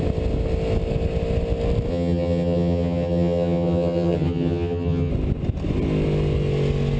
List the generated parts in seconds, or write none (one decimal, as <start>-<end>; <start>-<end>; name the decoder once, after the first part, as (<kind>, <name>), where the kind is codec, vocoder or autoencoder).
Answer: 1.9-5.1 (vocoder, HiFi-GAN)